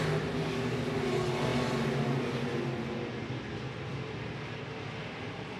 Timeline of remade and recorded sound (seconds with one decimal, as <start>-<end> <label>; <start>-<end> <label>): 0.0-5.6 recorded

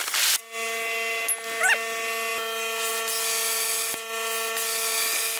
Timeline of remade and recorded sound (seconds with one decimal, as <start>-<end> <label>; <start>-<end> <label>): 0.0-5.4 recorded